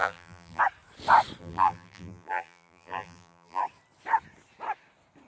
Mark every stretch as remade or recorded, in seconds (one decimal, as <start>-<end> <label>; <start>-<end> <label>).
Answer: 0.0-0.6 remade; 0.6-1.4 recorded; 1.4-3.6 remade; 3.6-5.3 recorded